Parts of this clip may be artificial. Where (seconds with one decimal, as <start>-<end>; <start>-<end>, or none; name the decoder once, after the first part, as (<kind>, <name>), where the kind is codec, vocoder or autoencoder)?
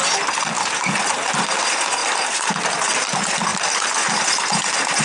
2.0-2.6 (vocoder, BigVGAN v2)